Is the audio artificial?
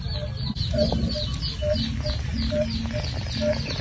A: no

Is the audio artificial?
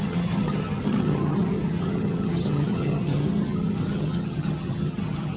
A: yes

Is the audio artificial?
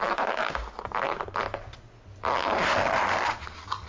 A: no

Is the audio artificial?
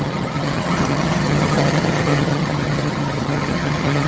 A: yes